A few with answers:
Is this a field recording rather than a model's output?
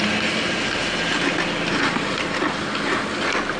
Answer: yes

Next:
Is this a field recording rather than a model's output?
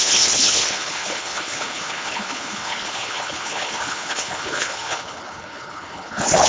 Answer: no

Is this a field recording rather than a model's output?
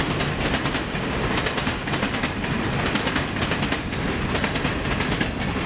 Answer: yes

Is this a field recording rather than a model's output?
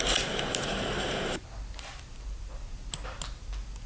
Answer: yes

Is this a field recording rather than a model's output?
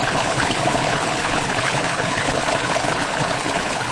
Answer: no